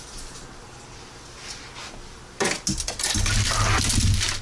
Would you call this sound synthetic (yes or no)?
no